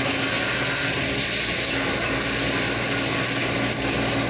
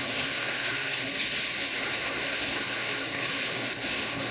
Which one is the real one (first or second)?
first